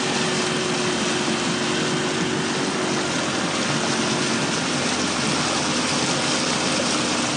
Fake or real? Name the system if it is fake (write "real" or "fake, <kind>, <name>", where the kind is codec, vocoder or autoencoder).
real